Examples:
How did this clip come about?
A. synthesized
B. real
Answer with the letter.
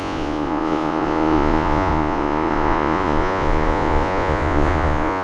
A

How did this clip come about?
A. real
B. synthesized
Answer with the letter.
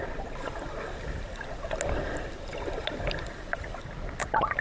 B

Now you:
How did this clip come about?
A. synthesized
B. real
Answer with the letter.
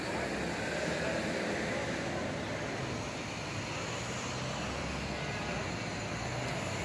B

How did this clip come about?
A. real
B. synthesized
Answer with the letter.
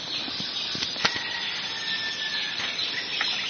A